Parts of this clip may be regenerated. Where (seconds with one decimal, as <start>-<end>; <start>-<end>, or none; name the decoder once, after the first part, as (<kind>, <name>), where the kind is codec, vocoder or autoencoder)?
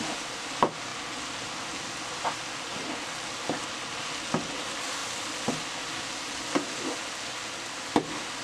none